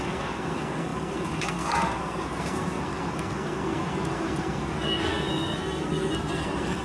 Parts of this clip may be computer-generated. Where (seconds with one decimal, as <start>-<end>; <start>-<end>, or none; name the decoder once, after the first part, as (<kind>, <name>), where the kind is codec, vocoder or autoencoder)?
0.0-6.8 (codec, SNAC)